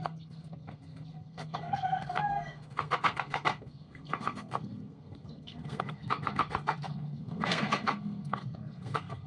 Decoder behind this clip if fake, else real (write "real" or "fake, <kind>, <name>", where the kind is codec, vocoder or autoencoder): fake, codec, SNAC